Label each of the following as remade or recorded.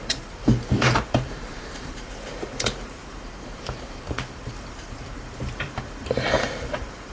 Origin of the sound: remade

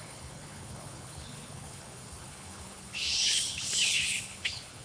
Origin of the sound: remade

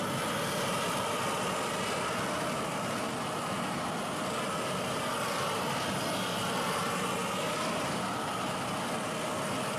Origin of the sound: recorded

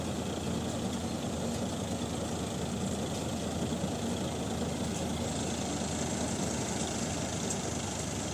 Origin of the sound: recorded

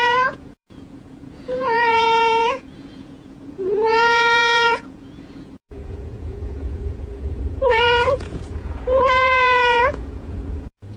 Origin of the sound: remade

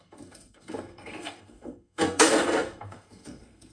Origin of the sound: remade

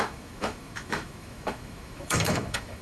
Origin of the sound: remade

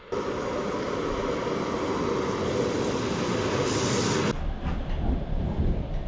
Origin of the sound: recorded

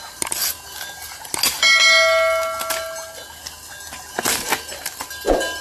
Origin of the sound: recorded